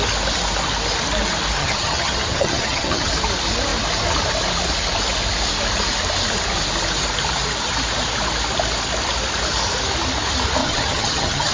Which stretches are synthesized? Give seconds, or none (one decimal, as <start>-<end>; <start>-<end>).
1.6-3.1; 10.6-11.5